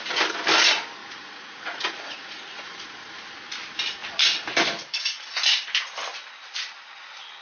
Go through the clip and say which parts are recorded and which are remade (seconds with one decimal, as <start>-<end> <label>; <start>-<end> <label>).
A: 0.0-1.0 recorded; 1.0-2.8 remade; 2.8-7.4 recorded